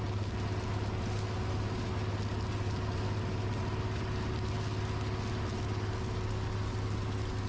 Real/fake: real